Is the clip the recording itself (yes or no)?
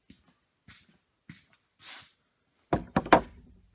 yes